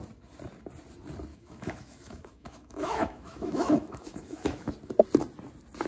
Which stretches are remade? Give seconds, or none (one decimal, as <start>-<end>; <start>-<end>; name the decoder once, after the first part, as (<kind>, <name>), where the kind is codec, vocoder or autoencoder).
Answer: 1.3-4.7 (autoencoder, DAC-VAE)